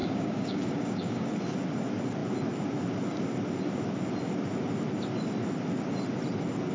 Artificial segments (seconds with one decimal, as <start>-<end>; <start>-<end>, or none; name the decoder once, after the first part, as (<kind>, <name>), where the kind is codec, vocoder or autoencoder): 0.0-1.3 (codec, DAC)